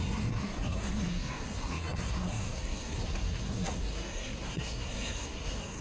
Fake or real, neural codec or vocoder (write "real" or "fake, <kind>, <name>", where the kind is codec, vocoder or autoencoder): fake, codec, SNAC